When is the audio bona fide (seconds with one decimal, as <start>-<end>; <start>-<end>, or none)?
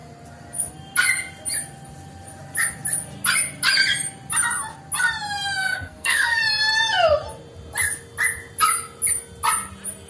0.0-5.6; 6.4-10.1